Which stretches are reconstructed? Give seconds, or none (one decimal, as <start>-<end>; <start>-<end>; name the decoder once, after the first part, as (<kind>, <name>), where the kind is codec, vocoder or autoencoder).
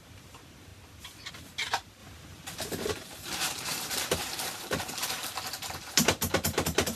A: 0.0-0.7 (vocoder, BigVGAN v2); 1.3-2.0; 2.9-7.0